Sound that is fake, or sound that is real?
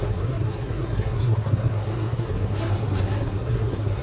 fake